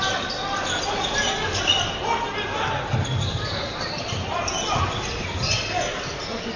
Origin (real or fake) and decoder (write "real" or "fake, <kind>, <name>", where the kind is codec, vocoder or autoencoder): real